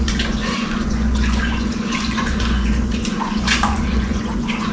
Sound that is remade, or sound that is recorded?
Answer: remade